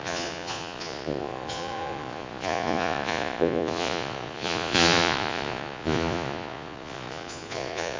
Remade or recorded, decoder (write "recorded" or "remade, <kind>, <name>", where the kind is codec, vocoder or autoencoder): remade, vocoder, Vocos